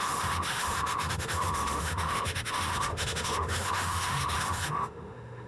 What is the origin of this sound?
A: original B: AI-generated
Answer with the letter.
B